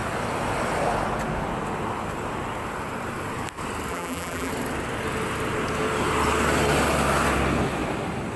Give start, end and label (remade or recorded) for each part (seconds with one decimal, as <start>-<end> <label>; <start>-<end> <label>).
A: 0.0-3.9 recorded; 3.9-4.5 remade; 4.5-8.4 recorded